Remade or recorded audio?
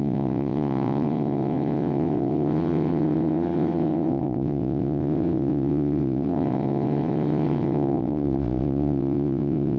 remade